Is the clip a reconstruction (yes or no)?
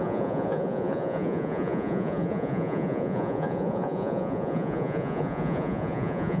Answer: yes